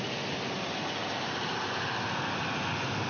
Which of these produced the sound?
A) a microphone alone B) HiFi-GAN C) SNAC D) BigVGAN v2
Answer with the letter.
A